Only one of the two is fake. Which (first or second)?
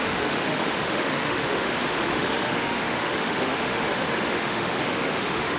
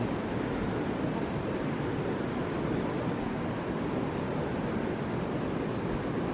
first